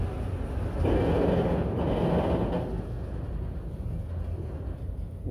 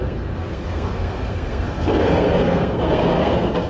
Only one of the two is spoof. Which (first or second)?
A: second